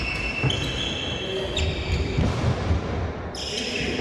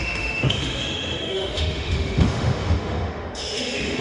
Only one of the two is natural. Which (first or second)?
first